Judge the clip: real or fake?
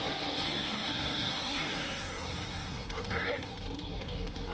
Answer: fake